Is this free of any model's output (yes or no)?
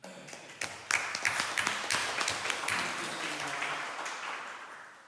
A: yes